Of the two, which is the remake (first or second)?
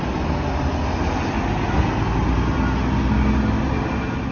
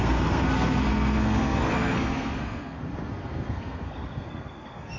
second